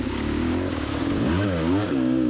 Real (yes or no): no